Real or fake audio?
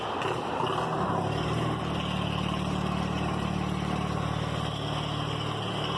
real